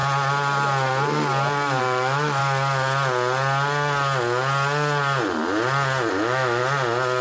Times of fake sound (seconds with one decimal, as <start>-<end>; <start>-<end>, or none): 1.8-2.4; 6.1-6.6

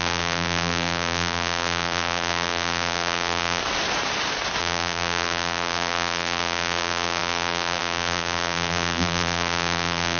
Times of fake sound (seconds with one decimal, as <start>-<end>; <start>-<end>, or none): 0.0-3.6; 4.6-10.2

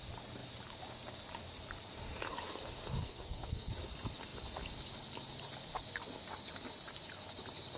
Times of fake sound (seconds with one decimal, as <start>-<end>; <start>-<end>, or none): 3.0-3.7

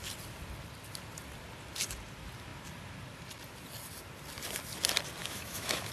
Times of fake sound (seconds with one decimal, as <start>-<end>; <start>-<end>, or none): 5.2-5.9